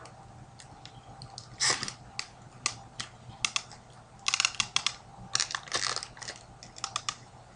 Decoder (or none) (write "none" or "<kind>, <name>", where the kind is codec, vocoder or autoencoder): none